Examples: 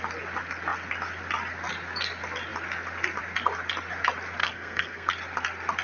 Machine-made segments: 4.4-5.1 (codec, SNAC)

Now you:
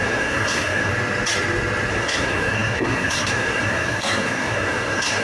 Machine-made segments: 0.0-0.9 (codec, SNAC); 1.9-5.2

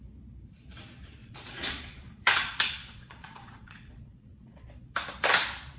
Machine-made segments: 1.2-4.7 (vocoder, Vocos)

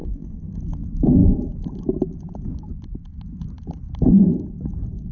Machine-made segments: 0.0-0.6 (codec, SNAC)

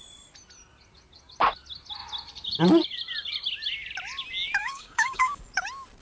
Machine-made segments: 4.6-5.4 (codec, DAC)

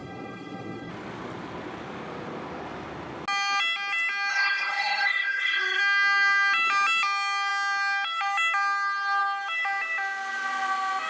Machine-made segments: 0.0-0.9 (codec, SNAC); 4.3-5.8

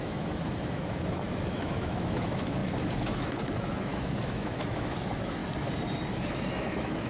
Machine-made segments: 0.0-5.4 (autoencoder, DAC-VAE); 6.1-7.1

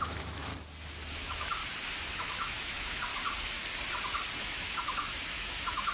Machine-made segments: 0.0-0.5 (autoencoder, DAC-VAE); 1.1-1.6; 2.1-3.1; 4.4-5.9